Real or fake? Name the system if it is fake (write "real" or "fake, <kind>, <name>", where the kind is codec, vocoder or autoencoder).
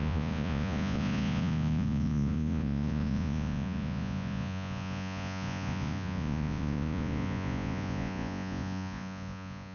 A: fake, vocoder, Vocos